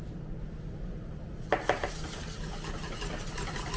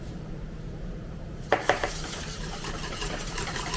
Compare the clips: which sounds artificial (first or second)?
second